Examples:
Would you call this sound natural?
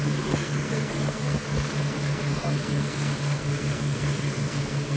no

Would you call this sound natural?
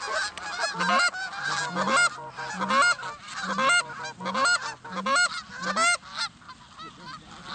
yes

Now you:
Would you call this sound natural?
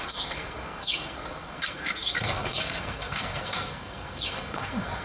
no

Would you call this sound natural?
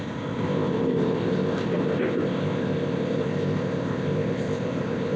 no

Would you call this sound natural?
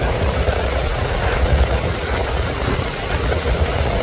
no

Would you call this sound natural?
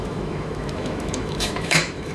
no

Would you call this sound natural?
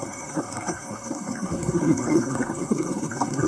no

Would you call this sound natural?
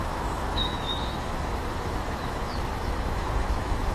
no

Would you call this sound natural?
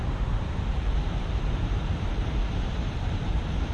no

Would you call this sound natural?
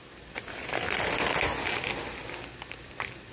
yes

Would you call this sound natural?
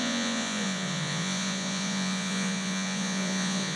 no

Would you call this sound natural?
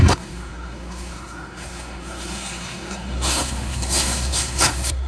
no